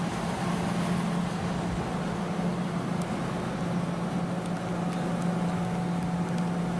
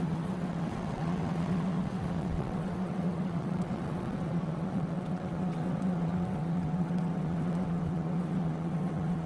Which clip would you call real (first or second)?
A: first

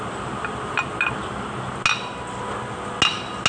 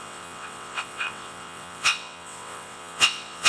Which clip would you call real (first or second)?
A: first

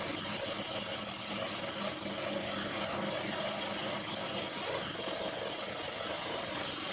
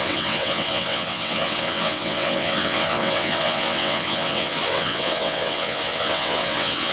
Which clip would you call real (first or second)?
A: first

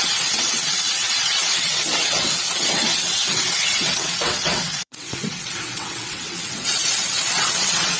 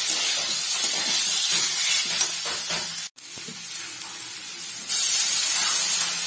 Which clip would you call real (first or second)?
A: second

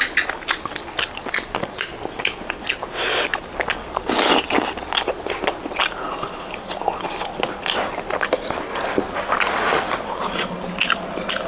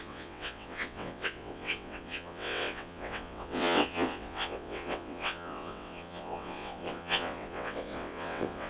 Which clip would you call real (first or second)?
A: first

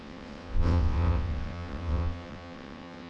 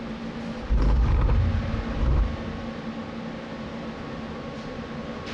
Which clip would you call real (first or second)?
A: second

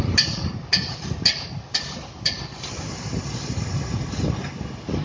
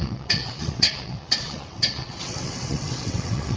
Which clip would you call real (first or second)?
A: first